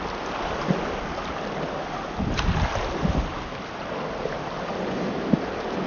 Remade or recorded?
recorded